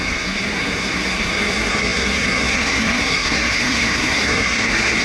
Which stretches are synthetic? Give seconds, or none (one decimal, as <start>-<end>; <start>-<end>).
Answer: 0.0-5.0